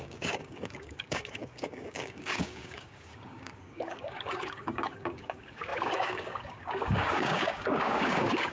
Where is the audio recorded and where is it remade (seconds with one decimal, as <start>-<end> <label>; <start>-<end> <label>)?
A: 0.0-8.5 remade